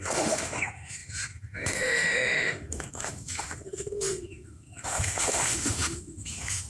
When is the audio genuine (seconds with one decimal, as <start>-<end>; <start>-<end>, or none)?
none